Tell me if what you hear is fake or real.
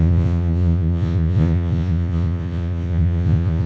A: fake